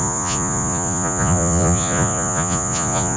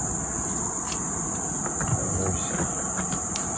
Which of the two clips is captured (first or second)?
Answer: second